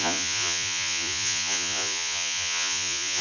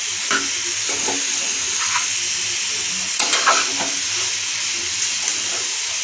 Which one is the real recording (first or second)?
second